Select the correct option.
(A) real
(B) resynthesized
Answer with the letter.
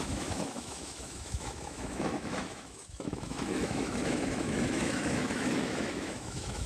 B